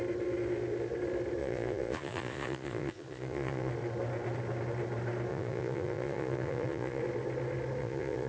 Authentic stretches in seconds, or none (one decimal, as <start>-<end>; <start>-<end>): 0.0-1.4; 3.7-5.3; 7.0-7.8